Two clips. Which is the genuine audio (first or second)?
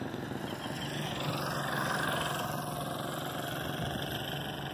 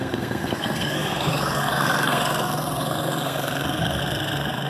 first